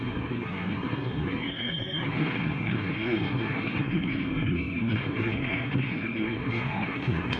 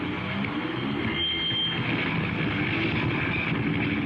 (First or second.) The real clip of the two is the second